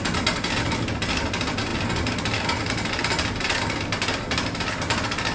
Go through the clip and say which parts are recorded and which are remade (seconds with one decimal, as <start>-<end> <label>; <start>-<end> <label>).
0.0-5.3 recorded